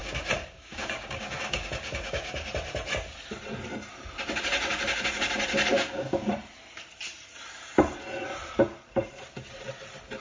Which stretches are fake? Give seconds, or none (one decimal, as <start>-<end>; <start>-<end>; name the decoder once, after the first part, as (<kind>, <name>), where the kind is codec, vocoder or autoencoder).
0.0-2.5 (codec, DAC); 5.7-6.3